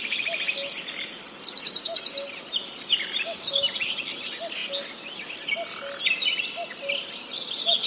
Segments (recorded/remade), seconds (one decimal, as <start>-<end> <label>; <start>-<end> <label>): 0.0-7.9 recorded